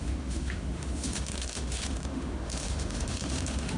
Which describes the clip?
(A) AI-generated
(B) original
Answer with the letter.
A